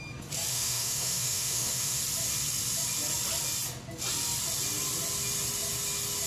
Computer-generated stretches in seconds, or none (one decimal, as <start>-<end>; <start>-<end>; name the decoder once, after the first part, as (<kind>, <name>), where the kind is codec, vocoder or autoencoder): 0.5-2.0 (autoencoder, DAC-VAE)

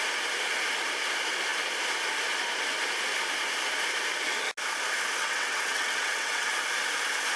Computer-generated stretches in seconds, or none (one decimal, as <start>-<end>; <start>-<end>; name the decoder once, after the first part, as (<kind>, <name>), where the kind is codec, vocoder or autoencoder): 5.2-6.5 (vocoder, WaveNeXt)

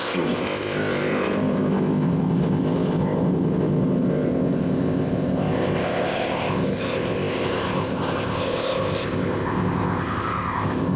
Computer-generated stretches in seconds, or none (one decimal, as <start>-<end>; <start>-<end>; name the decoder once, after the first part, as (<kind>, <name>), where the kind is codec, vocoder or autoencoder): 0.0-11.0 (codec, ZipCodec)

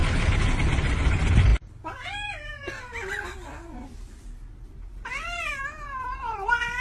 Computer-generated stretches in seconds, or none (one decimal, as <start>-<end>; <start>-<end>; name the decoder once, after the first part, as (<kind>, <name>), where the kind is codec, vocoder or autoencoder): none